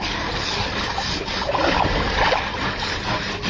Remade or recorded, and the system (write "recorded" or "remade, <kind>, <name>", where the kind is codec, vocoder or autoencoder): recorded